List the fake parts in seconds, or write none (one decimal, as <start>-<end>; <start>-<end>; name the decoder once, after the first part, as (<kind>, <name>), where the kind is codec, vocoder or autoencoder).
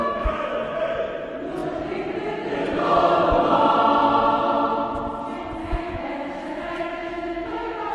0.0-0.8 (autoencoder, DAC-VAE); 5.6-7.9